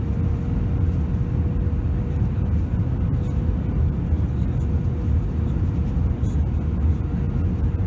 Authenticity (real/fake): real